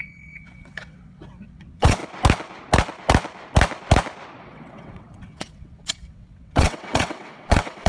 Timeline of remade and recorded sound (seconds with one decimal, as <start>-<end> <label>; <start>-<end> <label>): 0.0-2.0 remade; 2.0-4.4 recorded; 4.4-7.9 remade